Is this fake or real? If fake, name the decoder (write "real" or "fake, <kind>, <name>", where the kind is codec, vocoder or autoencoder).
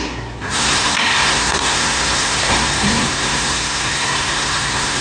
fake, codec, SNAC